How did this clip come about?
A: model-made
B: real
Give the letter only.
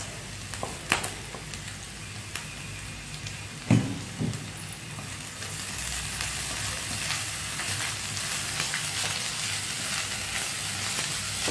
B